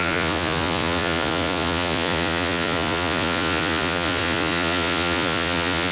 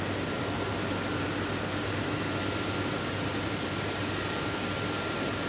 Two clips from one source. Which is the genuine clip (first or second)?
second